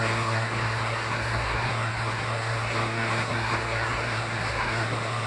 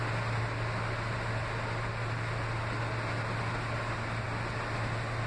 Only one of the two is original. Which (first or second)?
second